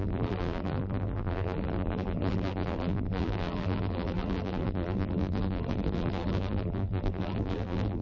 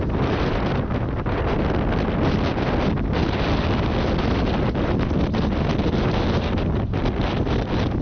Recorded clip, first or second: second